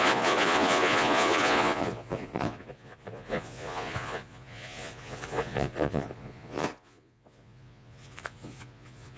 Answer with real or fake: fake